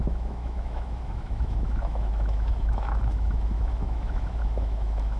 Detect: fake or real fake